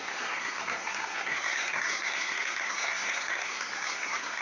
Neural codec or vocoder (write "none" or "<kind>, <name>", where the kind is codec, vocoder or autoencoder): codec, SNAC